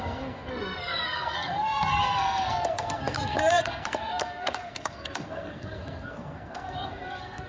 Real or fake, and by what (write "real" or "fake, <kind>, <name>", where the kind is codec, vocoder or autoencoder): fake, codec, SNAC